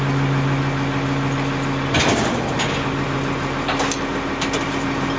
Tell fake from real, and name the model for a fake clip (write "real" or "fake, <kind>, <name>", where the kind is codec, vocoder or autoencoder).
real